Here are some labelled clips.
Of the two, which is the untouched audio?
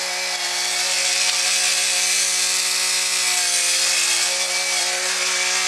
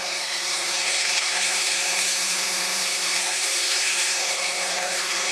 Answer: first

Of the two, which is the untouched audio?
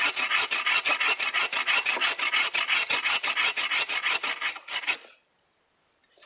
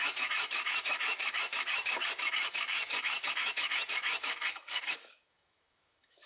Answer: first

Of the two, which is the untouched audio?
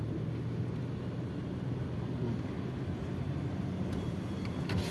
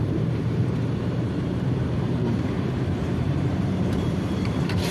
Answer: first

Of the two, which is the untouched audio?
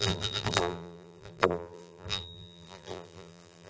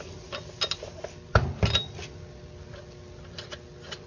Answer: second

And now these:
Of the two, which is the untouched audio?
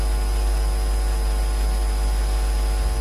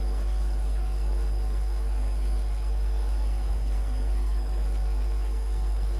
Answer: first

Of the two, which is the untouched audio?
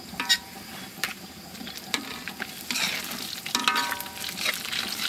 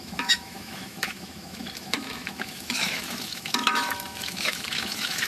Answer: first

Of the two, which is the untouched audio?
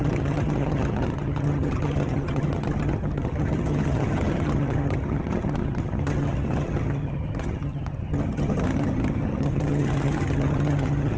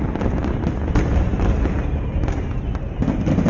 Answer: second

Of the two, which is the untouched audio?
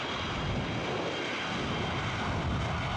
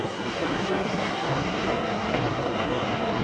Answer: first